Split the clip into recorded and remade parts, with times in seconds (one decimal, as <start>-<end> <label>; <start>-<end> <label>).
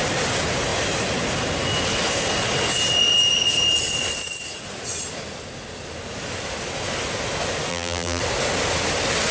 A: 0.0-7.7 recorded; 7.7-8.2 remade; 8.2-9.3 recorded